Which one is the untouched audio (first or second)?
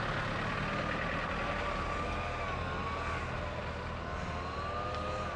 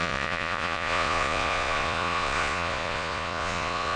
first